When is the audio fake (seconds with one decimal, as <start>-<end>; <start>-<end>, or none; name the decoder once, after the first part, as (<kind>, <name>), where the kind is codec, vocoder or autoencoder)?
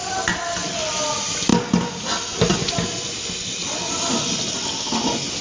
none